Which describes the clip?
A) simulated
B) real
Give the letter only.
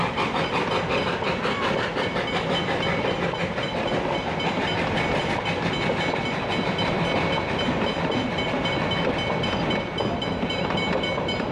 B